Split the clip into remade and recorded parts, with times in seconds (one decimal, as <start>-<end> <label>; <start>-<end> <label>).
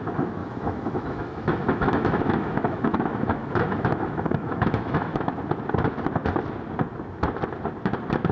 0.0-0.4 recorded; 0.4-5.3 remade; 5.3-8.3 recorded